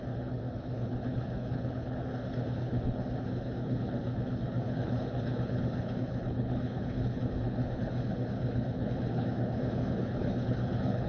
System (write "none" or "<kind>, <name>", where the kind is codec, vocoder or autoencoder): codec, HILCodec